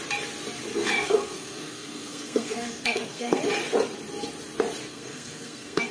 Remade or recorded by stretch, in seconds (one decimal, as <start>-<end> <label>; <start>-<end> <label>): 0.0-0.7 recorded; 0.7-3.4 remade; 3.4-4.9 recorded; 4.9-5.9 remade